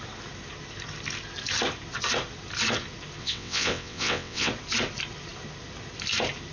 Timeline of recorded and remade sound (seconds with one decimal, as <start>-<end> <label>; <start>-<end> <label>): 0.0-3.2 recorded; 3.2-4.5 remade; 4.5-6.5 recorded